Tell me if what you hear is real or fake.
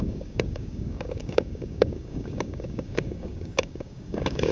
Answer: fake